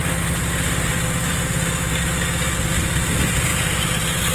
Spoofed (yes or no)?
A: no